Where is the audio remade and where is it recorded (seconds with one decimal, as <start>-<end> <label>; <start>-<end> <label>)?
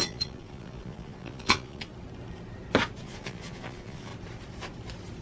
0.0-1.9 remade; 1.9-3.0 recorded; 3.0-4.1 remade; 4.1-5.2 recorded